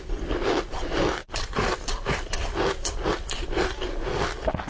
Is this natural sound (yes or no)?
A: yes